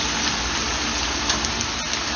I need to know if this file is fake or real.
real